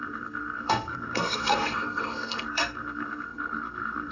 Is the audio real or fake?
fake